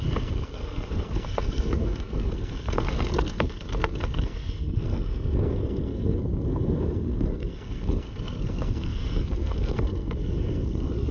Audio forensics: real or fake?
fake